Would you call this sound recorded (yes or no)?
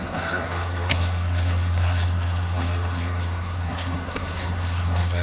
no